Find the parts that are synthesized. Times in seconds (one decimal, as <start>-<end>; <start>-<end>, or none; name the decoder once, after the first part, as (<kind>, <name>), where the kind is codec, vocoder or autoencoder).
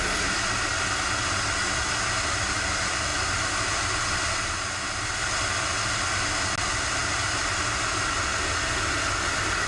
none